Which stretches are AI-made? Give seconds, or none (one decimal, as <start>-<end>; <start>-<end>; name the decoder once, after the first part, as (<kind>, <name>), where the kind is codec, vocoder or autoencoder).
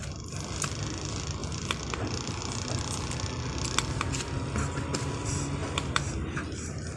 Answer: 1.4-2.4 (vocoder, BigVGAN v2); 5.6-7.0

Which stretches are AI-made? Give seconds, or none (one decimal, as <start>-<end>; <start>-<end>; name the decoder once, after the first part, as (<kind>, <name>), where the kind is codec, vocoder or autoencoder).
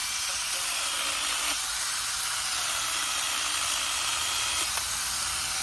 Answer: 0.0-0.8 (vocoder, BigVGAN v2); 4.1-4.7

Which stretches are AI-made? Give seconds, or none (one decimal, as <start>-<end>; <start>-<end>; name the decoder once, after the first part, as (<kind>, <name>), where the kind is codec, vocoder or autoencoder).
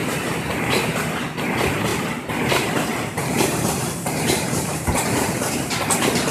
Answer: 0.0-0.9 (vocoder, BigVGAN v2); 1.9-5.7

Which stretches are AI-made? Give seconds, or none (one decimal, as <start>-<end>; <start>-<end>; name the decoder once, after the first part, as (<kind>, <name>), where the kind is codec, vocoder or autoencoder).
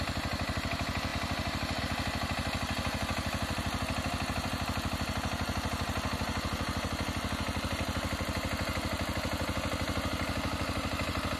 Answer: none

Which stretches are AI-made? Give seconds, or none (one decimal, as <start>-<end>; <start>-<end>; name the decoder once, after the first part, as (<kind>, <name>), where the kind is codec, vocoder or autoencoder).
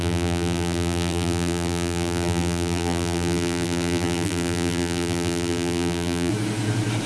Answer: 0.0-6.3 (vocoder, BigVGAN v2)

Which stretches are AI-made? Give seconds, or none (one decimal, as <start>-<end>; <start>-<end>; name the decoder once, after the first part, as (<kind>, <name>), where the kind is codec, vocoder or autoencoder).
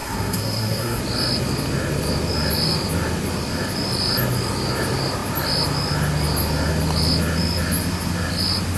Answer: 0.0-1.0 (codec, SNAC)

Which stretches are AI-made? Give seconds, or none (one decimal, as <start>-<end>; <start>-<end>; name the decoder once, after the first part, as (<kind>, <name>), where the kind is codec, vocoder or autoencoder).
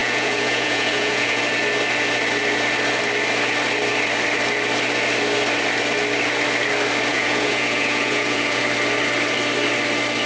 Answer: 0.0-1.4 (vocoder, Vocos); 7.1-8.6